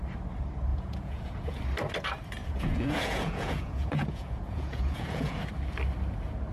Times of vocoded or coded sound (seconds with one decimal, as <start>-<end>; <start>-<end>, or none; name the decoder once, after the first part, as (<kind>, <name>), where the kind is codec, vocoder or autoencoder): 0.7-1.6 (vocoder, Vocos); 2.4-5.4